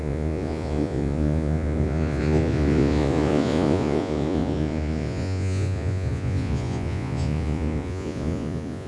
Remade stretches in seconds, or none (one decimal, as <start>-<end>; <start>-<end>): 0.0-8.9